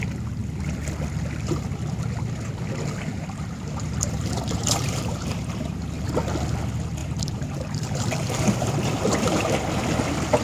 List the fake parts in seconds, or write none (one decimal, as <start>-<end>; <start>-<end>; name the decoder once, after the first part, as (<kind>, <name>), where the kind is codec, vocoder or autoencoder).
3.1-5.9 (vocoder, BigVGAN v2); 7.0-9.7